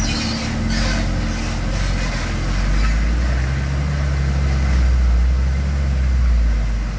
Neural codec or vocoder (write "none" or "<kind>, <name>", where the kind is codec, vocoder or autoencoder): none